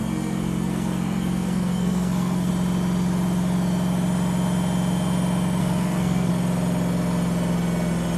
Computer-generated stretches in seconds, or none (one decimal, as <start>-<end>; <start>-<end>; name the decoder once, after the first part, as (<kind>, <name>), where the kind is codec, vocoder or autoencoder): 0.0-2.5 (codec, SNAC); 5.6-6.3